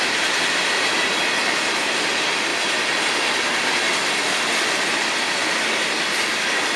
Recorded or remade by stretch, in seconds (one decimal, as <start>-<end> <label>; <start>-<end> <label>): 0.0-6.8 recorded